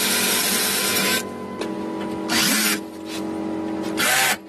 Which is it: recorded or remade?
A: recorded